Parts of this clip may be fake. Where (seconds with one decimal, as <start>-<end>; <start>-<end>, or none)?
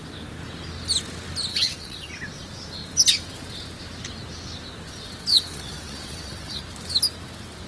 1.5-2.1; 5.3-6.6